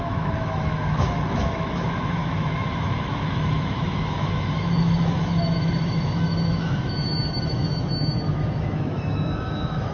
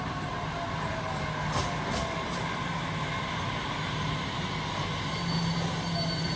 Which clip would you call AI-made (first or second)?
first